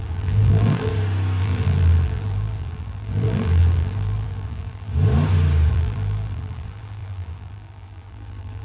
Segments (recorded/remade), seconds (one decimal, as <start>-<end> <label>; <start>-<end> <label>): 0.0-0.9 remade; 0.9-1.4 recorded; 1.4-4.9 remade; 4.9-5.7 recorded; 5.7-8.6 remade